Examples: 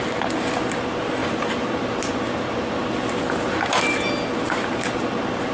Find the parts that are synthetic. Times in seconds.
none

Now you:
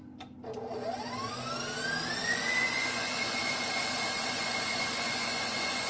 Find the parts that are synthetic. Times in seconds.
2.2-5.9

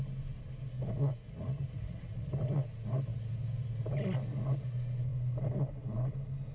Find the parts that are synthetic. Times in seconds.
1.1-2.3

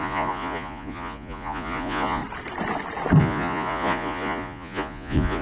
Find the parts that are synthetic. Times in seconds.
0.0-2.2; 3.2-5.4

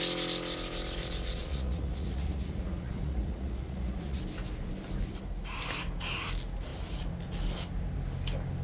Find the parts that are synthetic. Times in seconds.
1.4-4.2

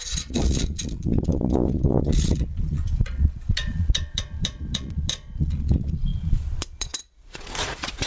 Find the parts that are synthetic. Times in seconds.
0.0-8.1

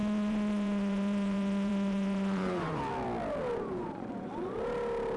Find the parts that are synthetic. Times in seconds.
0.0-2.8; 3.5-4.3

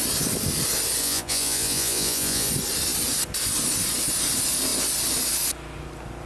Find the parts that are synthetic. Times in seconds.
1.0-2.5